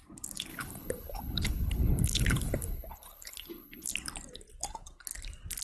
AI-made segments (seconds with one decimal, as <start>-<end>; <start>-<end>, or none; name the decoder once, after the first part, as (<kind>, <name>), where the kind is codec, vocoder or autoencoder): 0.5-3.9 (codec, HILCodec)